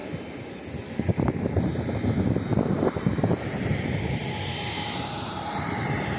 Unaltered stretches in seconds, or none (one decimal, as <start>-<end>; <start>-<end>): 0.0-2.5